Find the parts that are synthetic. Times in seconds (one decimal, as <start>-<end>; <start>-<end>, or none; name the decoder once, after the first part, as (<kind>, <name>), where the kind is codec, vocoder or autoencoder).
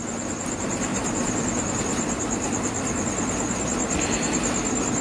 0.9-1.7 (vocoder, BigVGAN v2)